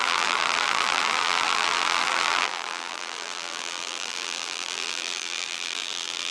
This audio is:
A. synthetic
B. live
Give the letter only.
A